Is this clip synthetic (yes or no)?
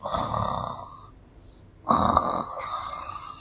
no